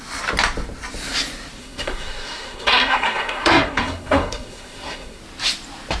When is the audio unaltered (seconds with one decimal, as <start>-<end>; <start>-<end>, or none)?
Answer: 0.0-1.6; 5.2-6.0